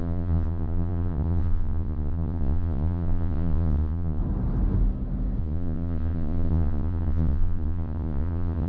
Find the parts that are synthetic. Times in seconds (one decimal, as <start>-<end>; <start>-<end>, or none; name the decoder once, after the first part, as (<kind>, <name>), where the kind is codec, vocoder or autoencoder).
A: 0.0-4.2 (vocoder, Vocos); 5.4-8.7